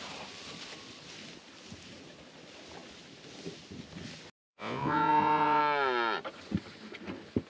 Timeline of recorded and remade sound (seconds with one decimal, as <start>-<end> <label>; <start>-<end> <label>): 0.0-4.4 recorded; 4.4-5.6 remade; 5.6-7.5 recorded